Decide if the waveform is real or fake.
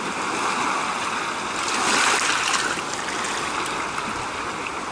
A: real